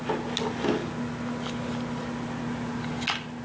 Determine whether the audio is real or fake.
real